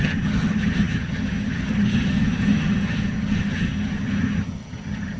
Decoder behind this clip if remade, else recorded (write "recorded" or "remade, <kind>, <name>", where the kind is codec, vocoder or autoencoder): remade, vocoder, HiFi-GAN